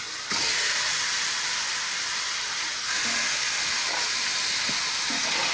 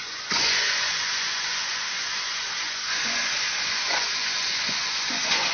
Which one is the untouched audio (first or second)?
first